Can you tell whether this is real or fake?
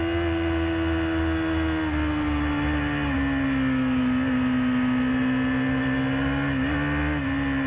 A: real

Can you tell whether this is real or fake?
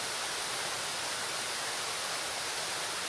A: real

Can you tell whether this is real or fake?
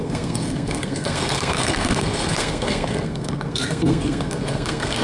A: fake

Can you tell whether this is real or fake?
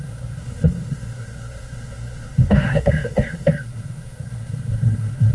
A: fake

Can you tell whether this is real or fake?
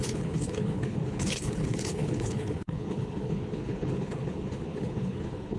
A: fake